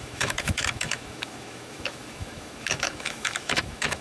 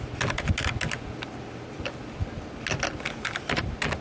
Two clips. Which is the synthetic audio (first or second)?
first